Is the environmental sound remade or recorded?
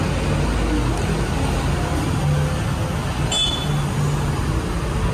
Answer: recorded